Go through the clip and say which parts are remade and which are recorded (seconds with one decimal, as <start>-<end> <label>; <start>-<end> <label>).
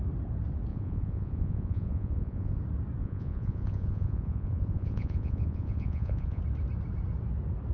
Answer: 0.0-0.7 recorded; 0.7-2.6 remade; 2.6-3.0 recorded; 3.0-6.4 remade; 6.4-7.7 recorded